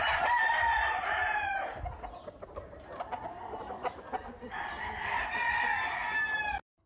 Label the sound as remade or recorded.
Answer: recorded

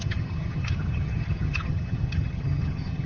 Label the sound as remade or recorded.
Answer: remade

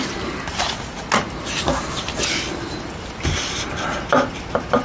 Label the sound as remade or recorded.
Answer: recorded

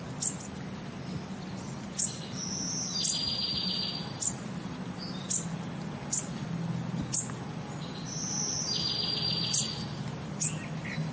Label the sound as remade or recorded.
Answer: recorded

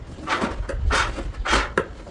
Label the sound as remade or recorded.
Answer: recorded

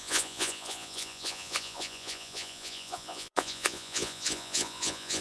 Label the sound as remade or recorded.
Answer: remade